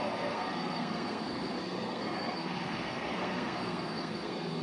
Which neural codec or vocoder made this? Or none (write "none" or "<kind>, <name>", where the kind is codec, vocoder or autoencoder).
codec, SNAC